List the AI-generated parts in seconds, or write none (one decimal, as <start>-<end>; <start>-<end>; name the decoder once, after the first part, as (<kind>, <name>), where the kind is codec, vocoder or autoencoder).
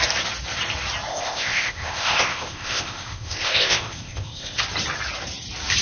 1.1-4.6 (codec, ZipCodec)